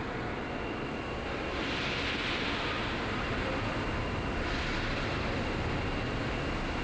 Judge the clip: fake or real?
real